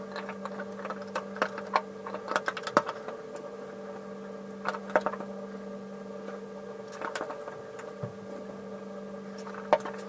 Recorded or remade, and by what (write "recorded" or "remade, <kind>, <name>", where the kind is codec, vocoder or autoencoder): recorded